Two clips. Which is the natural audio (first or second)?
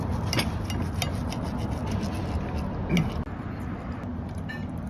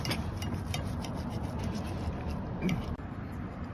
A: first